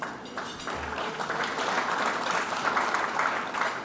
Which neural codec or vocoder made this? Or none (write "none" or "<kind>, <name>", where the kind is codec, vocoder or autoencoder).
none